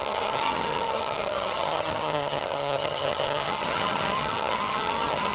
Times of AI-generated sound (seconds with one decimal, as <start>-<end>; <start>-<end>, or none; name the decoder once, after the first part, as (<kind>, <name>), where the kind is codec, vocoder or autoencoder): 0.0-5.3 (vocoder, HiFi-GAN)